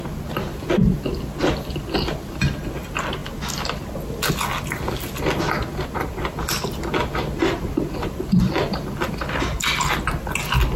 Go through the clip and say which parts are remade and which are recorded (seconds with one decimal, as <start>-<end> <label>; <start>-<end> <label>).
0.0-10.8 recorded